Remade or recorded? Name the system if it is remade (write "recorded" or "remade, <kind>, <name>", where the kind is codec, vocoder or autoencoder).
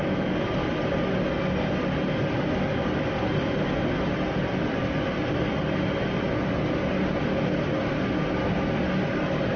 recorded